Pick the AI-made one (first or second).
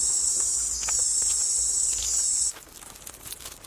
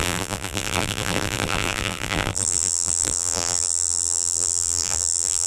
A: second